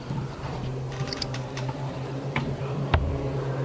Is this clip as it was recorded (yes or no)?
no